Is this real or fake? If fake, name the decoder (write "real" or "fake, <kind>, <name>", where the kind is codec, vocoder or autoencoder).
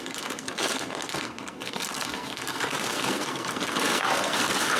fake, codec, SNAC